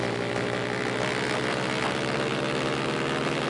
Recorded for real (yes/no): yes